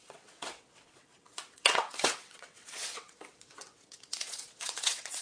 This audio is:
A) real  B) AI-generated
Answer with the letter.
B